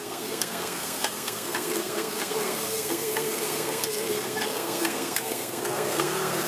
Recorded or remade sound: remade